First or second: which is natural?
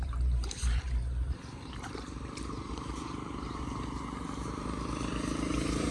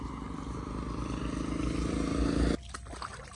second